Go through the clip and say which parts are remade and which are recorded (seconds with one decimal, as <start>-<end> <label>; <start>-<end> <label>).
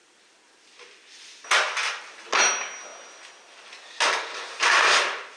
0.0-5.4 recorded